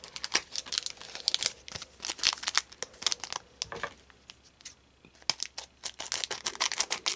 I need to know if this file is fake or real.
real